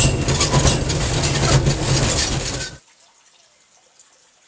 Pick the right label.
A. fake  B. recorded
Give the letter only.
B